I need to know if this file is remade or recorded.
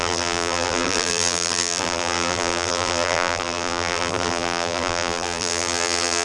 remade